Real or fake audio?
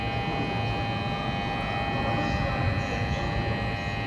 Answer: real